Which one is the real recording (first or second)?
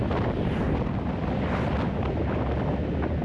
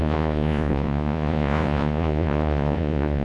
first